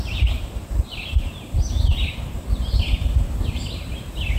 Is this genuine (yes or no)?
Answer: no